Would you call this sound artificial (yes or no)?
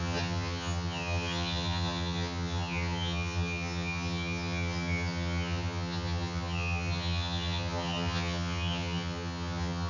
yes